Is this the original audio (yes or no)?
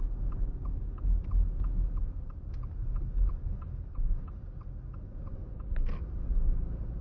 yes